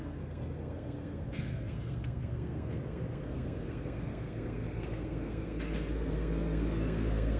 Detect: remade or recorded remade